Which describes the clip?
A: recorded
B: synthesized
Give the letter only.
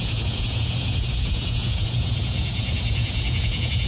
B